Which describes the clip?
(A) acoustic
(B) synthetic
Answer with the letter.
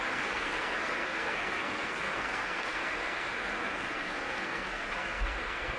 B